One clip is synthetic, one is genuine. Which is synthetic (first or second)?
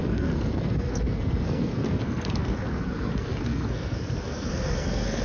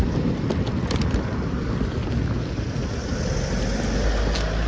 first